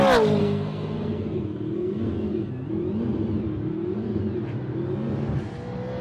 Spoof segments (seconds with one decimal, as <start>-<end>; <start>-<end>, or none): 0.4-2.5; 3.7-4.2